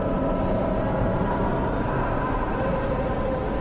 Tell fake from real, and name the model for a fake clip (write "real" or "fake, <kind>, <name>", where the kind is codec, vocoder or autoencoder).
real